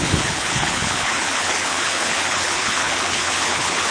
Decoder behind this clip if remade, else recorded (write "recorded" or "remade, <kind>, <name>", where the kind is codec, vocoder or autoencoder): remade, codec, HILCodec